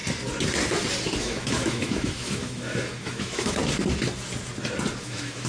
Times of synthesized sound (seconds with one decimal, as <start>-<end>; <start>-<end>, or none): 1.2-3.6; 5.0-5.5